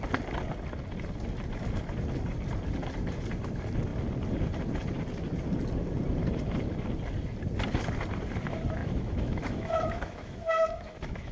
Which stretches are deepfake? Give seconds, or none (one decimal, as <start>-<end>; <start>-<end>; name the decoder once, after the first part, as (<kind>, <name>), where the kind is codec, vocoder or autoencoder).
8.8-11.3 (autoencoder, DAC-VAE)